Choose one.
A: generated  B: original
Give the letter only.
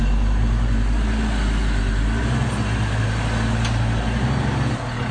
B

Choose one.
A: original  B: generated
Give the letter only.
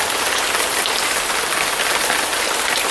A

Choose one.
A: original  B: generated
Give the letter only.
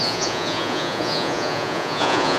B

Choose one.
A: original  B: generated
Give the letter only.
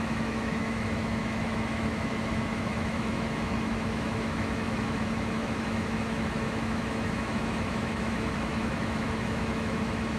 B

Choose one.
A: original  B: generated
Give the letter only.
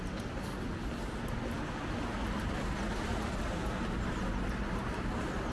A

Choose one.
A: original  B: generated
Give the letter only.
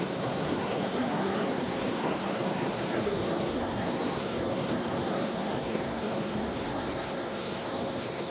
B